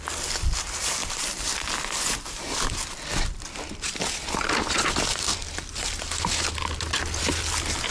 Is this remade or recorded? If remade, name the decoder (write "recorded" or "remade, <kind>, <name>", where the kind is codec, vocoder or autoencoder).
recorded